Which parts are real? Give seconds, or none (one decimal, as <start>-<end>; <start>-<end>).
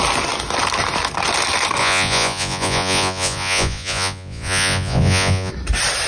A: 0.0-1.8; 5.5-6.1